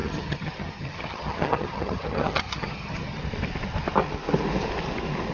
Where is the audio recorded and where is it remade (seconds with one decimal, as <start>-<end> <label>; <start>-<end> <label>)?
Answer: 0.0-3.2 remade; 3.2-5.3 recorded